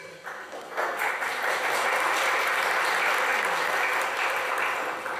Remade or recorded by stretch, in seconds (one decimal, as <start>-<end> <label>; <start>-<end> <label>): 0.0-0.4 recorded; 0.4-1.1 remade; 1.1-5.2 recorded